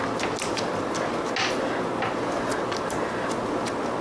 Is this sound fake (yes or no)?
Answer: no